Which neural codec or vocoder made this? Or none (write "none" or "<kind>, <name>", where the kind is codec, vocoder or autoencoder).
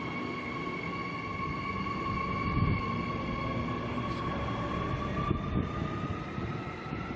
none